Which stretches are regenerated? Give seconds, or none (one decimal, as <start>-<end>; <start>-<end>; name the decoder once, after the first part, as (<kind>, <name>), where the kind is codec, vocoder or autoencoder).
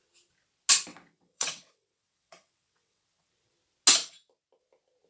0.9-3.3 (vocoder, WaveNeXt)